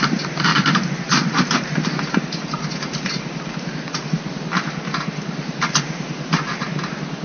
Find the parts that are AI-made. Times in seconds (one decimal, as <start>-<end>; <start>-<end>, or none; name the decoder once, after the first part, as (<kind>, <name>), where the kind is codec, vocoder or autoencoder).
none